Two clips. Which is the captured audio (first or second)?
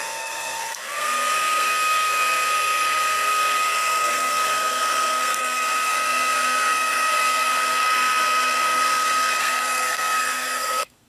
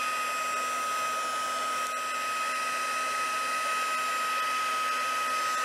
second